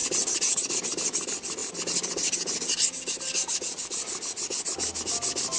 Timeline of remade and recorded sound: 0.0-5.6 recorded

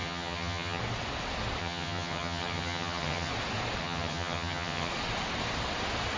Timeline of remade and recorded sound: 0.0-0.8 remade; 0.8-1.6 recorded; 1.6-3.3 remade; 3.3-3.8 recorded; 3.8-4.9 remade; 4.9-6.2 recorded

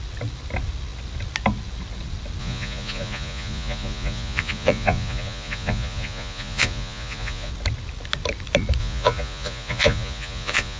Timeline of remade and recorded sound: 0.0-2.4 recorded; 2.4-7.5 remade; 7.5-8.8 recorded; 8.8-10.8 remade

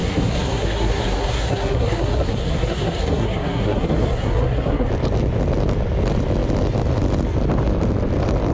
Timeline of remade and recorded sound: 0.0-4.9 remade; 4.9-8.5 recorded